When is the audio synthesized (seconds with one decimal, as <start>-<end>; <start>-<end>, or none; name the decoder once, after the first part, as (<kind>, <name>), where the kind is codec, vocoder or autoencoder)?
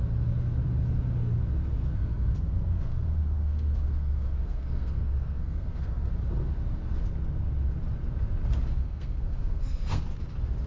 1.8-6.1 (codec, SNAC); 8.8-10.0